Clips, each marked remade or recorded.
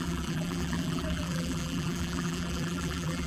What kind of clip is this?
remade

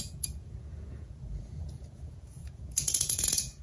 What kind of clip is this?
remade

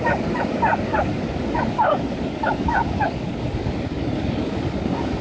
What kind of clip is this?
remade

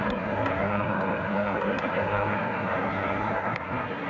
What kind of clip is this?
remade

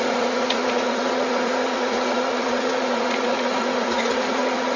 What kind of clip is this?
remade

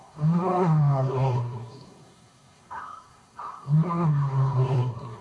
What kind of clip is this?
remade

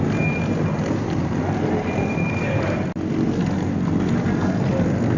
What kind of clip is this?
recorded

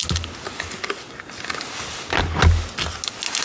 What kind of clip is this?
recorded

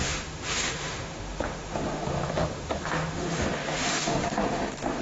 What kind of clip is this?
remade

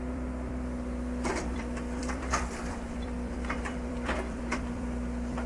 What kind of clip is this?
remade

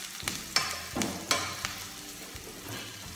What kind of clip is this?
recorded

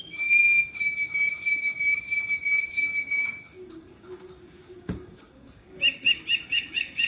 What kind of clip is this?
remade